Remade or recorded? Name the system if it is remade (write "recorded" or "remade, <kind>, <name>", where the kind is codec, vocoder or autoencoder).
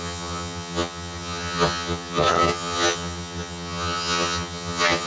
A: remade, vocoder, HiFi-GAN